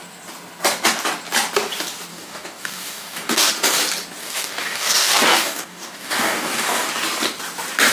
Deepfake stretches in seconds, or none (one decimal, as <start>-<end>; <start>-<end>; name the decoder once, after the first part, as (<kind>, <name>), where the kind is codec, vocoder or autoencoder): 2.1-3.5 (codec, DAC); 4.2-6.9